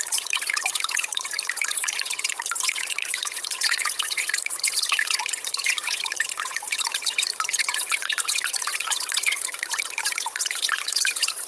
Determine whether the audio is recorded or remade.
remade